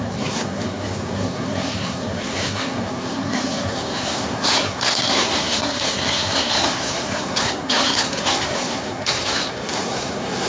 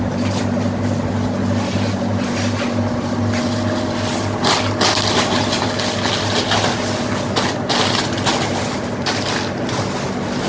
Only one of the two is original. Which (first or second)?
second